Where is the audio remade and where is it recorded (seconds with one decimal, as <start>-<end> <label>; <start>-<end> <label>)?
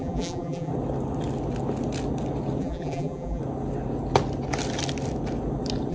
0.0-0.7 remade; 0.7-2.6 recorded; 2.6-3.4 remade; 3.4-5.9 recorded